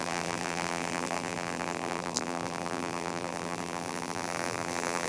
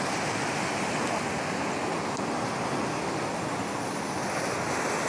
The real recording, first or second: second